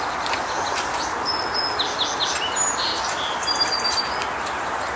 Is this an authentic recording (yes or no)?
yes